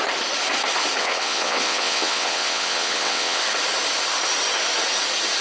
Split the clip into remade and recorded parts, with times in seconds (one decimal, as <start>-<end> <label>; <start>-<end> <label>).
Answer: 0.0-1.0 recorded; 1.0-3.4 remade; 3.4-5.4 recorded